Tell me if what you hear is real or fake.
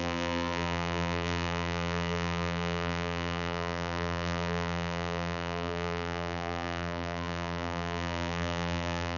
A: fake